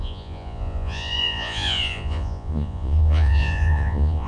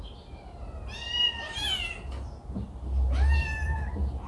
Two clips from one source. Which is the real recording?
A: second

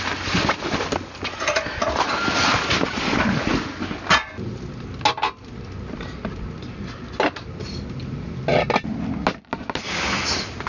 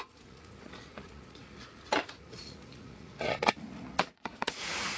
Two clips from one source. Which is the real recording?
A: first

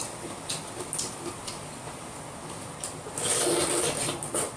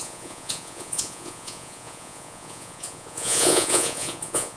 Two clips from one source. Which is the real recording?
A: first